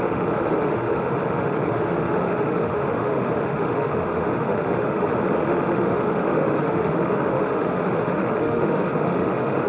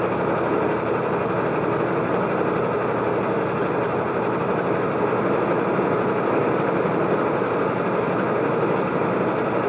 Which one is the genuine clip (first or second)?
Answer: second